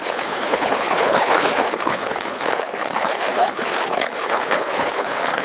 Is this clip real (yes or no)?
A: no